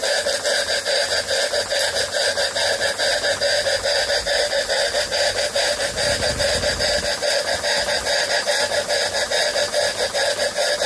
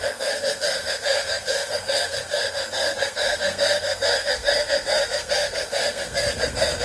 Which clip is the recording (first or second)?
first